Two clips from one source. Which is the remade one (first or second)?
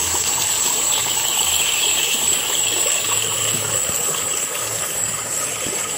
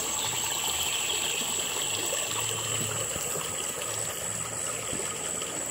first